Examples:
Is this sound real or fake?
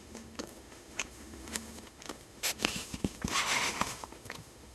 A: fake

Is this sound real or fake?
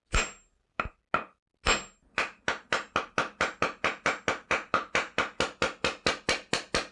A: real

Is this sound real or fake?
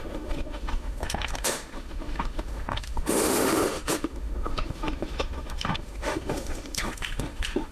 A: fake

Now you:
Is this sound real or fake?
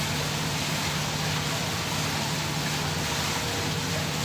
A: real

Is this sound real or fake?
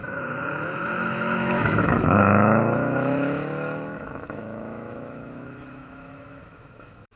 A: fake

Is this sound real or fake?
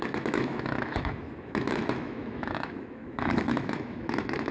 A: fake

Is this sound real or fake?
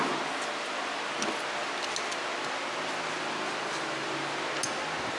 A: real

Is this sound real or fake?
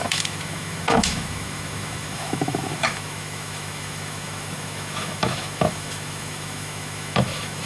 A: fake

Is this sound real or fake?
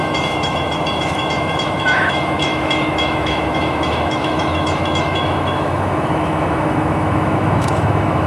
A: fake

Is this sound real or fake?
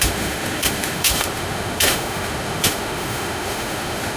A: fake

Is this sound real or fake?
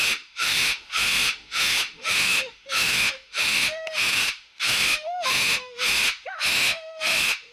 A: fake